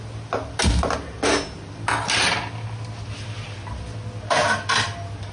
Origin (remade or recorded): recorded